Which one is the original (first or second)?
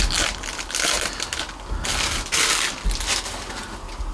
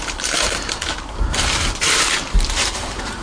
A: first